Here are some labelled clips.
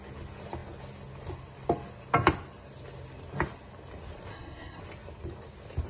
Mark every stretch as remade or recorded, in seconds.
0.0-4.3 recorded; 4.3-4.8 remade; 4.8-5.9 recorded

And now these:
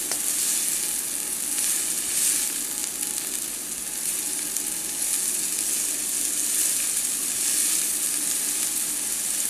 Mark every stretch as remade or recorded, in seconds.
0.0-9.5 recorded

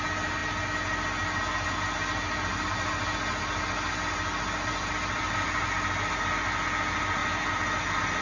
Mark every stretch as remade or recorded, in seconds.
0.0-8.2 recorded